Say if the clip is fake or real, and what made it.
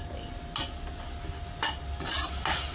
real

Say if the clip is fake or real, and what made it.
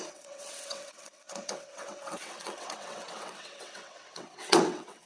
fake, vocoder, WaveNeXt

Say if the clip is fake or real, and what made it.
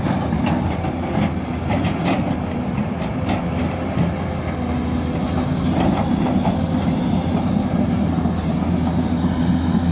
real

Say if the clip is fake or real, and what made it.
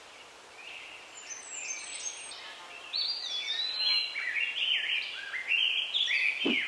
real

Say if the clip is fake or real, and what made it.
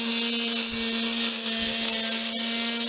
real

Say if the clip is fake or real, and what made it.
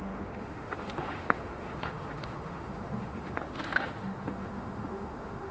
fake, autoencoder, DAC-VAE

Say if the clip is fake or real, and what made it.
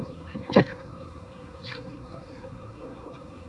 fake, codec, SNAC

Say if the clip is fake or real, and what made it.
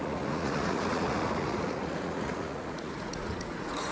fake, vocoder, Vocos